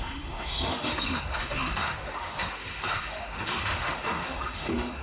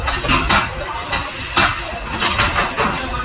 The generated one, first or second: first